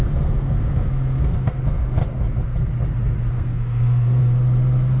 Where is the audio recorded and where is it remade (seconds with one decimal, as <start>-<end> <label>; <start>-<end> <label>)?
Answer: 0.0-2.0 remade; 2.0-3.3 recorded; 3.3-4.2 remade; 4.2-5.0 recorded